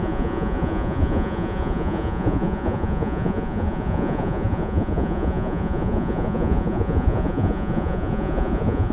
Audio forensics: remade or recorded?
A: remade